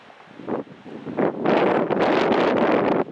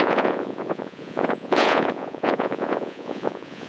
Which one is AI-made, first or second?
second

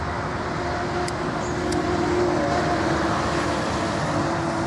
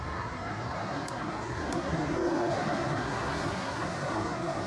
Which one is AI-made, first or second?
second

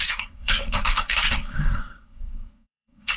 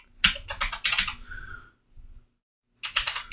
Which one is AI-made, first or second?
first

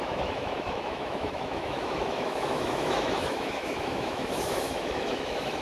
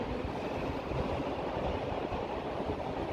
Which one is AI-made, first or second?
first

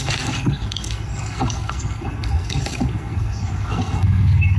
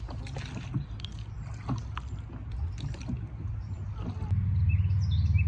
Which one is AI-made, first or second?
first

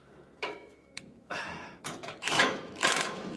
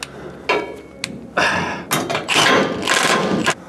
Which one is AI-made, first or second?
first